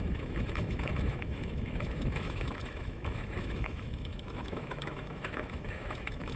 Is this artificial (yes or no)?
yes